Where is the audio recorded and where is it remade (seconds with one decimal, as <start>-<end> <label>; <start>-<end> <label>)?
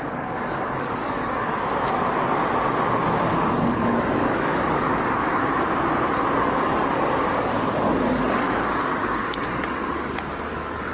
0.0-1.0 remade; 1.0-3.5 recorded; 3.5-5.4 remade; 5.4-6.5 recorded; 6.5-7.5 remade; 7.5-8.1 recorded; 8.1-10.9 remade